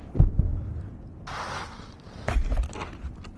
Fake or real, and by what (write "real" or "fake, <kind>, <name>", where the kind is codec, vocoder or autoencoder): real